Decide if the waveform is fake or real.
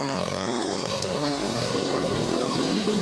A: fake